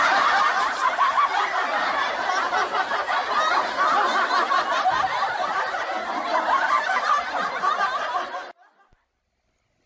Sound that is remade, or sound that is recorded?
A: recorded